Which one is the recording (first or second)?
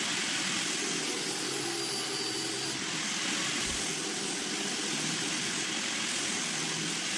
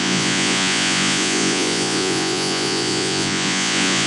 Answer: first